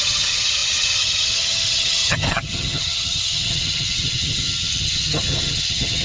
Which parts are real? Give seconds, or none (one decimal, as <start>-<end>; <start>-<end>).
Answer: none